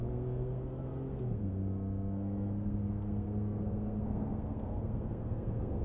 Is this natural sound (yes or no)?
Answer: no